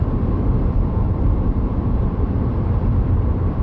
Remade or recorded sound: remade